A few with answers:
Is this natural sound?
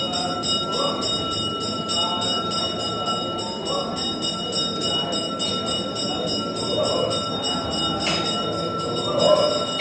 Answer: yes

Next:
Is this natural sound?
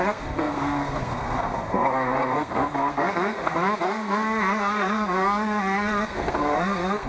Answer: no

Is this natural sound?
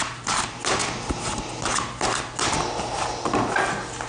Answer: yes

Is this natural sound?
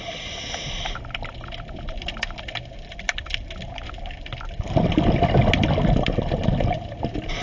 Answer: yes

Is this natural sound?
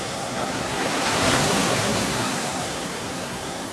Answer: no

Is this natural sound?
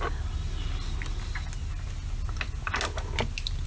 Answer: yes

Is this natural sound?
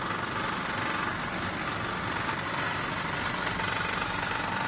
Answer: yes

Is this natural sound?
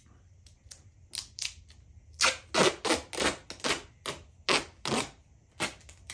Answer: yes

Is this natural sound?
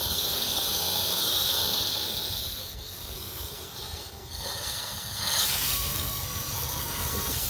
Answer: no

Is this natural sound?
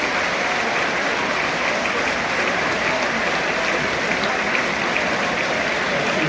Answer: yes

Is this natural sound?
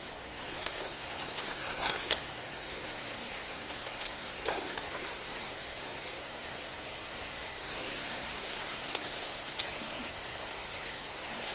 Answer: no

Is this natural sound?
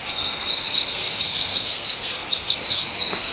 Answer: no